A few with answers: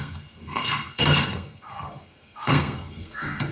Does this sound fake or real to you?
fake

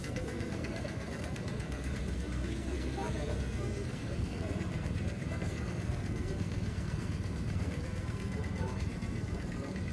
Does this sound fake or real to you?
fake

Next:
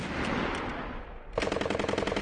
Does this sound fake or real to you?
real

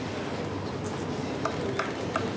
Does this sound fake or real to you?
real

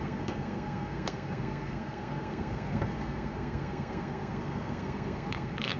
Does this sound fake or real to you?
fake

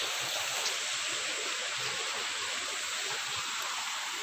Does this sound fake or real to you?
real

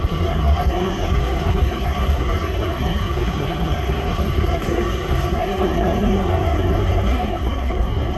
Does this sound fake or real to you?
fake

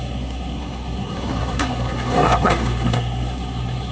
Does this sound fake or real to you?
fake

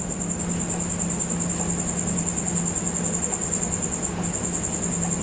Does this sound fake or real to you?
real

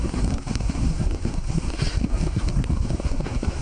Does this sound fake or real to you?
fake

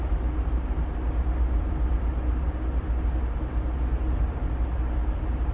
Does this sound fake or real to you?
real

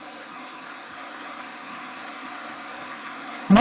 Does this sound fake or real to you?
fake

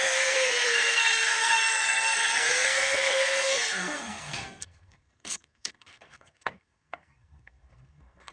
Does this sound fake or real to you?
fake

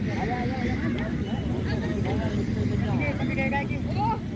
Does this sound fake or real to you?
real